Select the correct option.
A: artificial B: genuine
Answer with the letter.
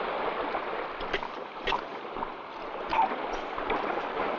B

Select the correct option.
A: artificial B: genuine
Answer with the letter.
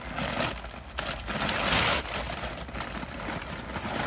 B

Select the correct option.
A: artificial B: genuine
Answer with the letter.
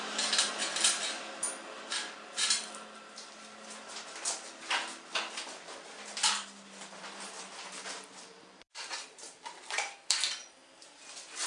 A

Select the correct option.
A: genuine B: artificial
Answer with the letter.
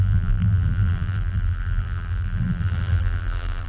B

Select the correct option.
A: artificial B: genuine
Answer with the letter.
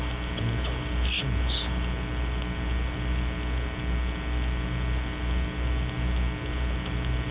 B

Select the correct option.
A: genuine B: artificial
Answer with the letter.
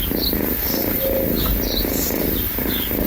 A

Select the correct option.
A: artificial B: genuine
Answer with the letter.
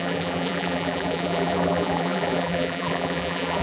A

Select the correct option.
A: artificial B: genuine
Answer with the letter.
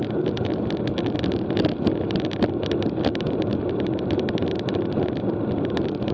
A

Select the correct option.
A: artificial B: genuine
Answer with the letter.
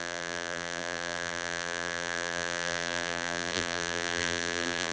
A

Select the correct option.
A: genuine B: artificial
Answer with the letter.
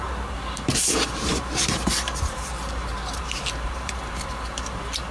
B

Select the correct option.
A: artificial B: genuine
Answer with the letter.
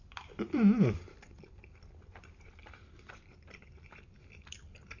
A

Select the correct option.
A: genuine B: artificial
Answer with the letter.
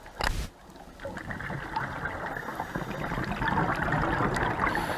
A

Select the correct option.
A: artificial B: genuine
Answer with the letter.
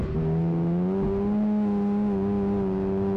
B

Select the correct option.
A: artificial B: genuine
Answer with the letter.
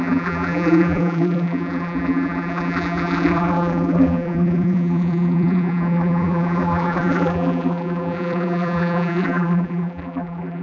A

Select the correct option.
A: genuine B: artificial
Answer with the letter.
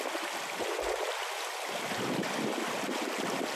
A